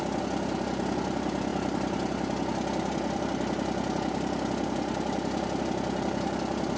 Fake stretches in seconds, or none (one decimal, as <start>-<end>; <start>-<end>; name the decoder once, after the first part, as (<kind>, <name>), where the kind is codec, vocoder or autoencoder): none